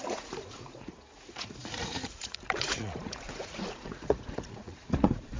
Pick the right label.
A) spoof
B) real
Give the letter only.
A